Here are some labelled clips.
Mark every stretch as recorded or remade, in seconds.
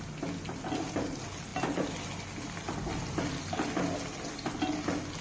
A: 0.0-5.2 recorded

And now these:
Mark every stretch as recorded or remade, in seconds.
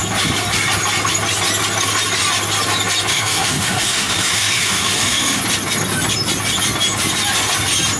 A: 0.0-3.1 recorded; 3.1-5.4 remade; 5.4-8.0 recorded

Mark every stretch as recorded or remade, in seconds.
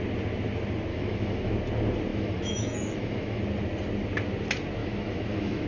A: 0.0-0.9 recorded; 0.9-1.5 remade; 1.5-2.1 recorded; 2.1-3.4 remade; 3.4-4.8 recorded; 4.8-5.7 remade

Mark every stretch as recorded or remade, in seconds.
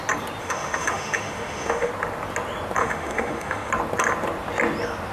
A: 0.0-0.4 recorded; 0.4-1.9 remade; 1.9-2.8 recorded; 2.8-3.7 remade; 3.7-5.1 recorded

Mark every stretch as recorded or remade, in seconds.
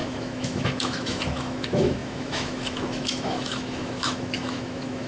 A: 0.0-5.1 remade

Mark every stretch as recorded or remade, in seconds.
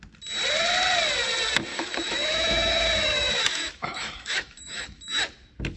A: 0.0-1.7 recorded; 1.7-5.2 remade; 5.2-5.8 recorded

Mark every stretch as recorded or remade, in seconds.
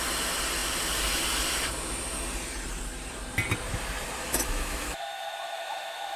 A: 0.0-4.2 recorded; 4.2-6.2 remade